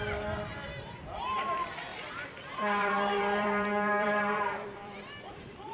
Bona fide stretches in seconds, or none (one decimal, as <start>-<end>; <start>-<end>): 0.0-1.9; 5.3-5.7

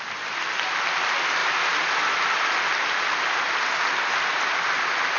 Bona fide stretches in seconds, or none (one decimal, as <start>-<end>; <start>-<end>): 0.0-5.2

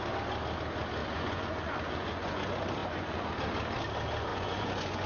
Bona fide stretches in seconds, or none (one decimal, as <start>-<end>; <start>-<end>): 0.0-1.0; 2.4-2.8; 3.3-4.3

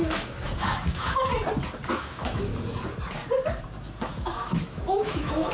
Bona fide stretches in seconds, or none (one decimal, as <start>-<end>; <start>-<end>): 1.3-1.9; 2.5-4.1

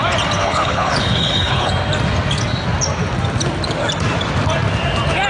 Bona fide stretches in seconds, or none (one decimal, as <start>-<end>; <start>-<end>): 0.0-0.4; 1.7-5.3

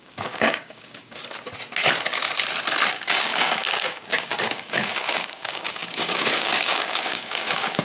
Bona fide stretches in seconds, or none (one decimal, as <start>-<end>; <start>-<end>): 1.2-2.9